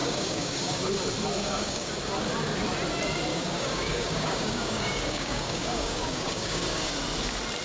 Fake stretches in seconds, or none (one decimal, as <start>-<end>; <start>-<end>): 0.0-0.9; 1.4-1.9; 3.3-6.9